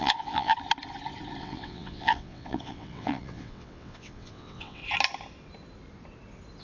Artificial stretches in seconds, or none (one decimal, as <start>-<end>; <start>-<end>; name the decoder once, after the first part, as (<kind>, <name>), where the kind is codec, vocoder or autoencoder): 0.0-0.5 (vocoder, WaveNeXt); 1.4-4.8